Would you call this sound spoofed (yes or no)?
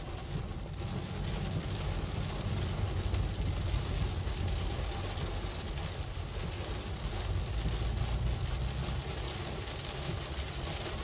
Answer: no